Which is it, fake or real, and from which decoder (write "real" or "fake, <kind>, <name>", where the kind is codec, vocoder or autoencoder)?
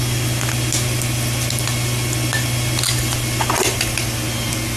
real